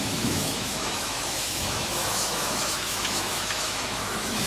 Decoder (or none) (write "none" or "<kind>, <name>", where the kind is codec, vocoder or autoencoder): autoencoder, DAC-VAE